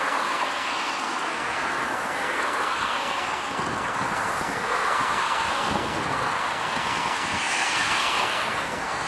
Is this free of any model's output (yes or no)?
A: no